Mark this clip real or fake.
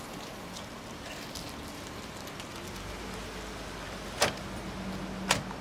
real